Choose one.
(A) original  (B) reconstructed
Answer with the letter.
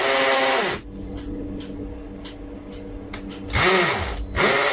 A